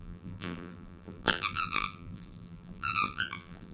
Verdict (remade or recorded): remade